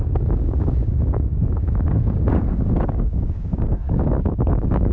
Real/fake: fake